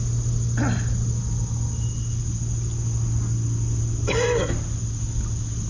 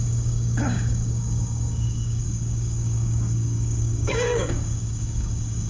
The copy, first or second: second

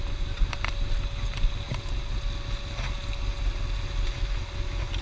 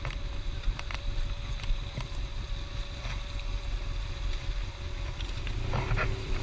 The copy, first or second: second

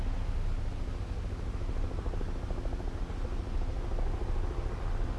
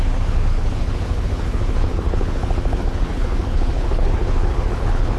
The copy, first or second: second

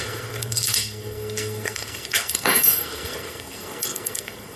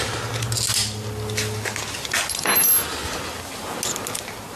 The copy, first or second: first